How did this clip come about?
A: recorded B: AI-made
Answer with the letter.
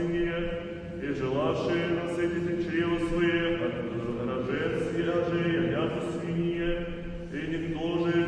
A